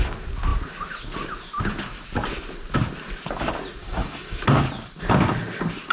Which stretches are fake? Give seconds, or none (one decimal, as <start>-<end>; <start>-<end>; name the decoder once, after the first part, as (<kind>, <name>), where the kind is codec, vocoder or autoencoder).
3.8-4.4 (codec, DAC)